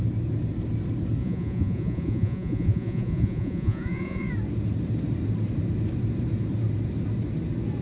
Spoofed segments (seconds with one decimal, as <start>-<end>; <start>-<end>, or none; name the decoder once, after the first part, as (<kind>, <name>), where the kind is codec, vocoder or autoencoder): 1.2-4.3 (vocoder, Vocos)